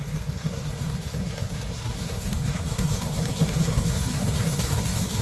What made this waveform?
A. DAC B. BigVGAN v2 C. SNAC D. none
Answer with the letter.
C